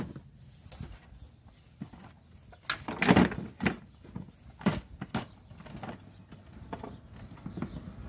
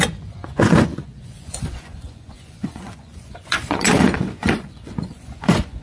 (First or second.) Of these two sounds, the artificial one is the second